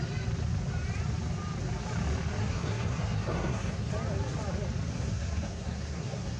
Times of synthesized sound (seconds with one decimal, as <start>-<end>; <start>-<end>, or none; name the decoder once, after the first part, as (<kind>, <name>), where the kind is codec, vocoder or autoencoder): 2.4-3.9 (codec, SNAC); 4.9-6.4